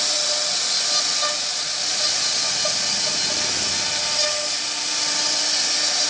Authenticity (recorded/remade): recorded